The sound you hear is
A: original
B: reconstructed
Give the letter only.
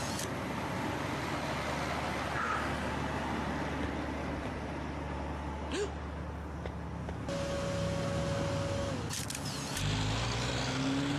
A